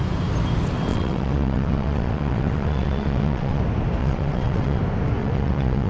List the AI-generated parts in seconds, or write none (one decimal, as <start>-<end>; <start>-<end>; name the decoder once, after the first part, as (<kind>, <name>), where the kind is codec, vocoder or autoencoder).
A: 0.9-3.6 (vocoder, WaveNeXt); 4.0-4.8; 5.2-5.9